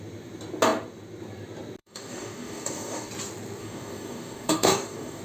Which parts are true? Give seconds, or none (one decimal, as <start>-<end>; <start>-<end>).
0.0-1.8; 3.1-3.6